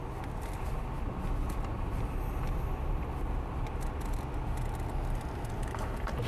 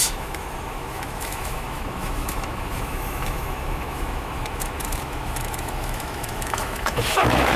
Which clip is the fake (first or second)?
second